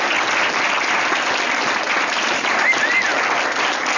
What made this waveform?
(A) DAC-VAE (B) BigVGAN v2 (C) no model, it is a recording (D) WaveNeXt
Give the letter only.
C